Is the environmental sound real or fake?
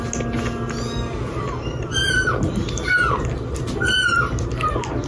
real